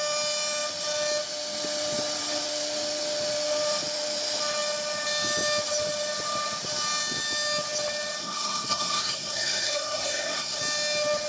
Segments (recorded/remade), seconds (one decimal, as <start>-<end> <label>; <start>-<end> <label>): 0.0-8.2 recorded; 8.2-10.6 remade; 10.6-11.3 recorded